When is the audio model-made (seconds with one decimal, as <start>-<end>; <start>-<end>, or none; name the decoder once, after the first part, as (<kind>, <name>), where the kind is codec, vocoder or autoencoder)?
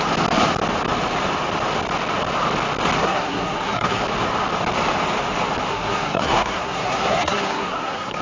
3.0-4.0 (codec, SNAC); 5.7-8.2